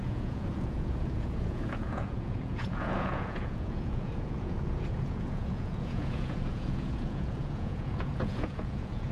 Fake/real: fake